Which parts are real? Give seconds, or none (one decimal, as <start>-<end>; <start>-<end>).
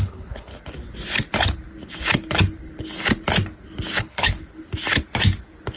0.5-4.0; 4.4-5.8